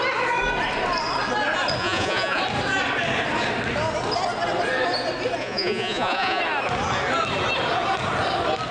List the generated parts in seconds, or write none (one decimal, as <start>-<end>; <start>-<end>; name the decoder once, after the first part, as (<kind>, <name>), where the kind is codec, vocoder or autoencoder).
1.8-2.4 (vocoder, Vocos); 5.4-6.4